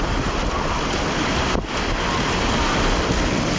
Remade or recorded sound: recorded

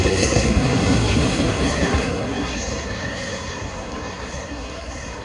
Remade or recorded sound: remade